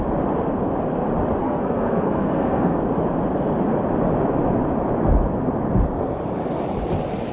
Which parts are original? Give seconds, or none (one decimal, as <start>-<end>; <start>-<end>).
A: 0.0-1.4; 2.8-7.3